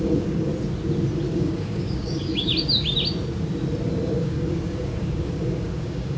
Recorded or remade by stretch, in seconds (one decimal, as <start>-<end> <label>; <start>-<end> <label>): 0.0-0.5 remade; 0.5-1.3 recorded; 1.3-2.5 remade; 2.5-4.2 recorded; 4.2-6.2 remade